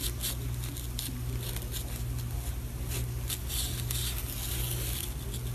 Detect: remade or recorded recorded